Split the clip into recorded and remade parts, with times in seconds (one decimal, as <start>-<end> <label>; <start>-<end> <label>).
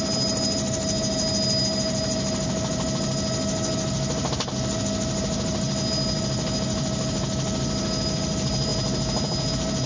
0.0-9.9 recorded